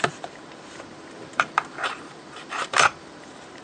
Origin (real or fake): fake